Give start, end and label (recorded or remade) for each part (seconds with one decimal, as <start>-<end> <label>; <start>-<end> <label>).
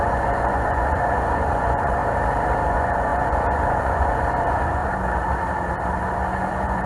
0.0-2.0 remade; 2.0-2.7 recorded; 2.7-4.8 remade; 4.8-6.5 recorded; 6.5-6.9 remade